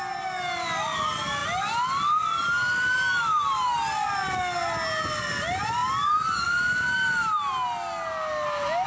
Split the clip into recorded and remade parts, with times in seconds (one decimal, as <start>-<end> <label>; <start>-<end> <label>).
0.0-8.9 recorded